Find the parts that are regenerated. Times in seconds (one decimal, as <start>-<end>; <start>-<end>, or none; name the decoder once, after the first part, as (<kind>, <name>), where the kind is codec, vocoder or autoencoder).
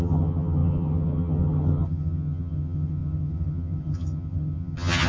0.0-5.1 (vocoder, HiFi-GAN)